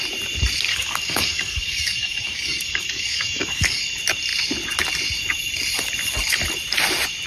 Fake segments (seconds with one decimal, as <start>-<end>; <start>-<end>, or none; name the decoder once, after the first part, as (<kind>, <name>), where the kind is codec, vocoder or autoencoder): 0.7-3.8 (codec, DAC)